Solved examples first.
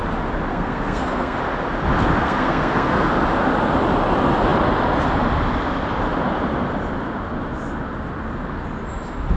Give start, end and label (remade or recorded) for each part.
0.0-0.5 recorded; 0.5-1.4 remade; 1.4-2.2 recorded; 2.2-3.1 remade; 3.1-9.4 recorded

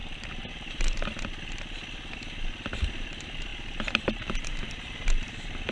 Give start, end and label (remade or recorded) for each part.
0.0-0.7 remade; 0.7-3.5 recorded; 3.5-4.6 remade; 4.6-5.7 recorded